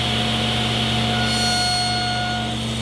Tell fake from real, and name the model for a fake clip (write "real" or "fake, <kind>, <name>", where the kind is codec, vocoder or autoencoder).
real